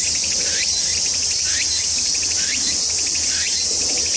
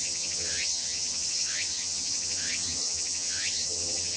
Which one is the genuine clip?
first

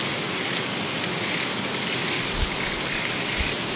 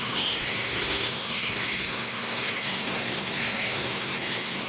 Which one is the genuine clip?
first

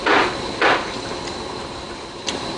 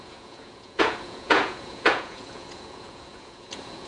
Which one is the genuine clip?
first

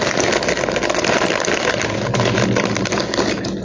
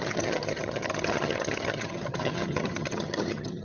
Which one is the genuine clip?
first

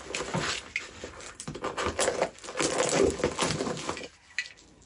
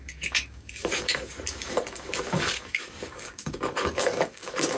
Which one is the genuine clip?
first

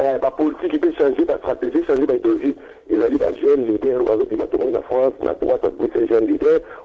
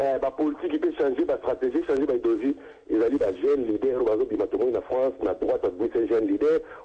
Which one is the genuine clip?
second